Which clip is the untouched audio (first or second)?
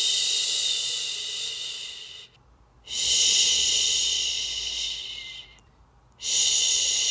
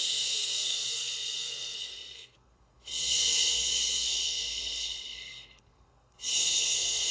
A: first